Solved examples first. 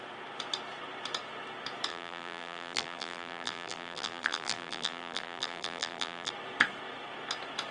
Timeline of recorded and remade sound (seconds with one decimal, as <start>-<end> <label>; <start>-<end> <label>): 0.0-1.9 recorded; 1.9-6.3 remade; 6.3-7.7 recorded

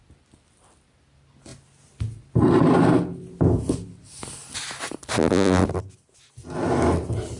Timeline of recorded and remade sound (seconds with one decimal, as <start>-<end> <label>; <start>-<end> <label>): 0.0-7.4 recorded

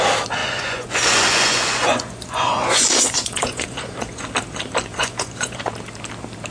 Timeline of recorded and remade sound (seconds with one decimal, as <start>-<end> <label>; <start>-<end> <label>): 0.0-0.4 recorded; 0.4-4.3 remade; 4.3-4.9 recorded; 4.9-5.6 remade; 5.6-6.5 recorded

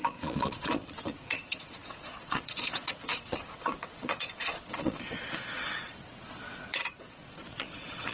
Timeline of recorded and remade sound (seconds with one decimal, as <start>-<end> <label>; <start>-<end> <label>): 0.0-8.1 remade